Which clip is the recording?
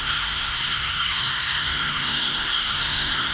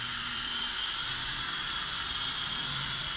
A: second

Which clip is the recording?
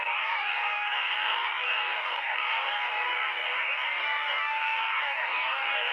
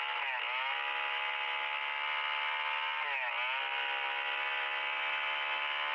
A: second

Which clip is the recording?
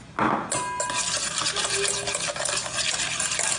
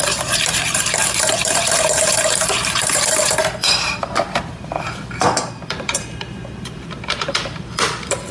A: first